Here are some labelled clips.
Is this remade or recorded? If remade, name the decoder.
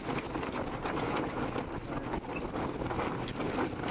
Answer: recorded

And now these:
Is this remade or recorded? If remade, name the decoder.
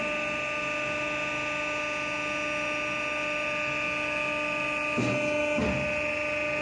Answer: recorded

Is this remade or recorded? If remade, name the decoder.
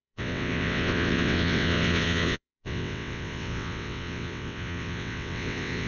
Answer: remade, vocoder, WaveNeXt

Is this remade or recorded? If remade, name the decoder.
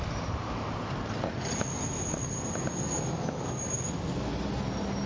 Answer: recorded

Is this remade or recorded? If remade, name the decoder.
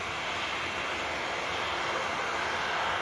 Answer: recorded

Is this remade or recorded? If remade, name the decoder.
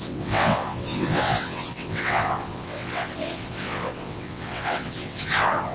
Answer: remade, vocoder, WaveNeXt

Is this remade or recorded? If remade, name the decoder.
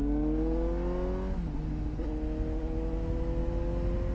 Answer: recorded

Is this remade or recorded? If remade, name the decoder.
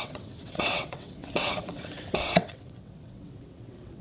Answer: remade, vocoder, WaveNeXt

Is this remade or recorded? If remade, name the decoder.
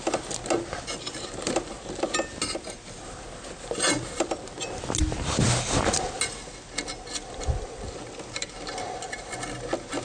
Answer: recorded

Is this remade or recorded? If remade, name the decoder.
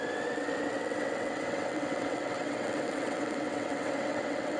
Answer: remade, vocoder, WaveNeXt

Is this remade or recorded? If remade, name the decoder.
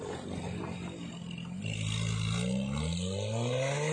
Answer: recorded